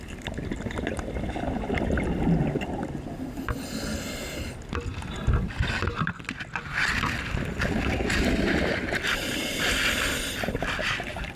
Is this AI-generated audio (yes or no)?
no